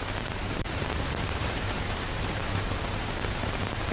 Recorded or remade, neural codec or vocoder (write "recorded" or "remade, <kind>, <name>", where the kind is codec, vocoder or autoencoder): remade, vocoder, BigVGAN v2